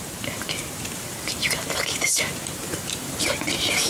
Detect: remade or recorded remade